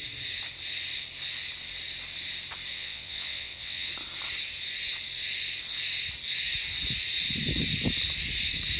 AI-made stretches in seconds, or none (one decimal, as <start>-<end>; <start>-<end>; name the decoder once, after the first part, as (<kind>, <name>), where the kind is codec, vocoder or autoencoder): 2.7-3.9 (vocoder, WaveNeXt)